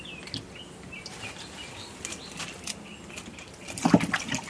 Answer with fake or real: real